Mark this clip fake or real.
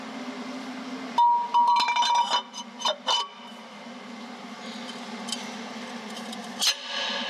real